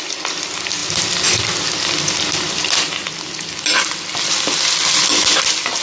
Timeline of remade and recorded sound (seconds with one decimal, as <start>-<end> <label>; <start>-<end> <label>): 0.0-5.8 recorded